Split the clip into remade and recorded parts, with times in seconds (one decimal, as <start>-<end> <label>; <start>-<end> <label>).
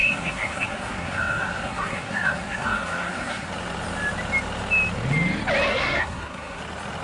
0.0-3.5 remade; 3.5-5.7 recorded; 5.7-6.6 remade; 6.6-7.0 recorded